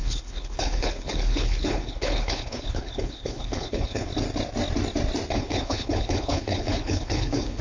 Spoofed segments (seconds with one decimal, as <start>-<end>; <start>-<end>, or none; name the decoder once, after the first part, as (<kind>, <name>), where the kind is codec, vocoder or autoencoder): 0.0-4.1 (codec, HILCodec); 5.3-7.6

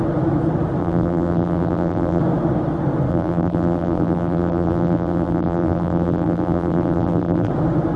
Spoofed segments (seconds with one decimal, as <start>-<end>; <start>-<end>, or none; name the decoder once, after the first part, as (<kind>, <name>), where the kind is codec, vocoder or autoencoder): 0.8-2.2 (vocoder, BigVGAN v2); 3.1-7.5

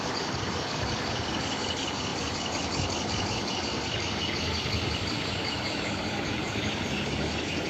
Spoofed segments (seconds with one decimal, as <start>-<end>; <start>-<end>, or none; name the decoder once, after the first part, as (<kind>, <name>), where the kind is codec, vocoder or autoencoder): 0.0-7.7 (codec, DAC)

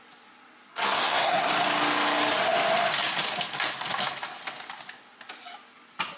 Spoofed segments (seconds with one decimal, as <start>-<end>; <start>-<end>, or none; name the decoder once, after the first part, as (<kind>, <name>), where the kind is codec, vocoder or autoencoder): 0.7-1.5 (codec, SNAC)

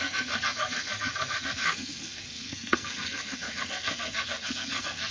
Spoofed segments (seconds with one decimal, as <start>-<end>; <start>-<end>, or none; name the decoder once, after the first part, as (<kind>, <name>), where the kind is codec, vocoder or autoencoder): 0.0-5.1 (codec, SNAC)